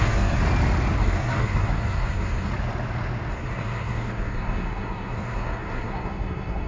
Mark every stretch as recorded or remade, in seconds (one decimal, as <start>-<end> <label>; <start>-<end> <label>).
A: 0.0-0.4 remade; 0.4-1.0 recorded; 1.0-2.5 remade; 2.5-3.3 recorded; 3.3-6.7 remade

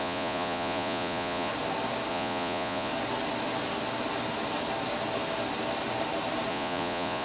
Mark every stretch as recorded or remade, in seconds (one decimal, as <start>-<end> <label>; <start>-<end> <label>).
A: 0.0-1.5 remade; 1.5-2.1 recorded; 2.1-2.9 remade; 2.9-6.5 recorded; 6.5-7.2 remade

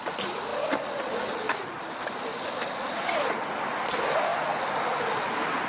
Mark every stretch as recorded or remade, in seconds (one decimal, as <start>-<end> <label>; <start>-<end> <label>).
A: 0.0-5.7 recorded

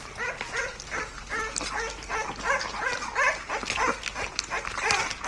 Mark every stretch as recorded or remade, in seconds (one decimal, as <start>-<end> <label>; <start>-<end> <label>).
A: 0.0-5.3 recorded